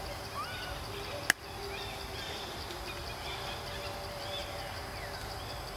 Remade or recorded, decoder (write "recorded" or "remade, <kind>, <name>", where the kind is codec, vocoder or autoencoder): recorded